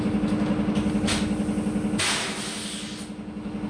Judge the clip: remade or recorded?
recorded